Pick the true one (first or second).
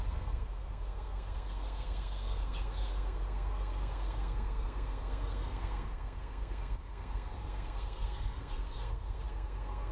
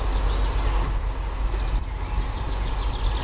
second